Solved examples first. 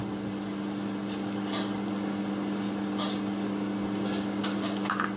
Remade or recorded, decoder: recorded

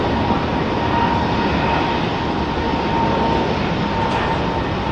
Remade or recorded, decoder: recorded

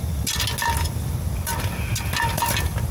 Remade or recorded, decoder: recorded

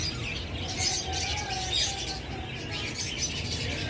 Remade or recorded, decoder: recorded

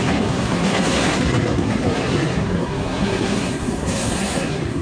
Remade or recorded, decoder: remade, codec, SNAC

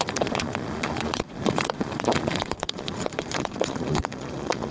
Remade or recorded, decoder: remade, vocoder, Vocos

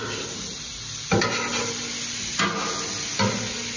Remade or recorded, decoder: recorded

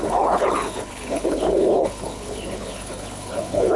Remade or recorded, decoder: remade, codec, HILCodec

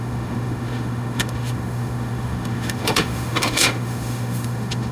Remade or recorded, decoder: remade, autoencoder, DAC-VAE